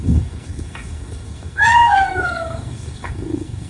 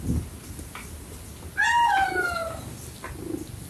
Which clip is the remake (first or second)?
first